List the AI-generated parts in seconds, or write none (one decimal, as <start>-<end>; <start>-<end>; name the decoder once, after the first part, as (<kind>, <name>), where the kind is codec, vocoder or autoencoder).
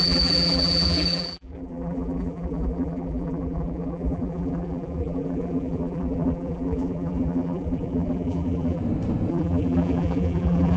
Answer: 0.0-8.8 (vocoder, BigVGAN v2); 9.3-10.8